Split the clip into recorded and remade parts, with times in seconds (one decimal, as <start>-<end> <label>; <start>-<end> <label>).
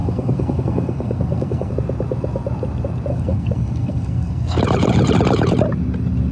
0.0-1.7 remade; 1.7-3.1 recorded; 3.1-4.6 remade; 4.6-6.3 recorded